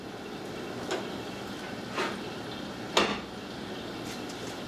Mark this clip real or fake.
real